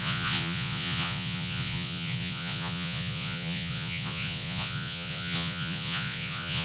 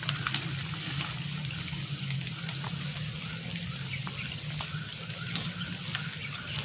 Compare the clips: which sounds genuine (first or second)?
second